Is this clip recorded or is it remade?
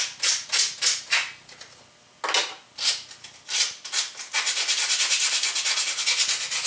recorded